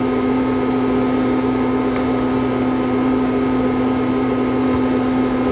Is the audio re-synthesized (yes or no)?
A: no